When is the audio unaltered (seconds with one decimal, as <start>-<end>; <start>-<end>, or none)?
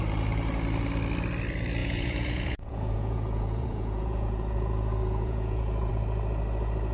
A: 0.0-1.8; 5.9-6.9